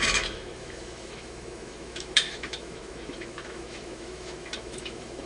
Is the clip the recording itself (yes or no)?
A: no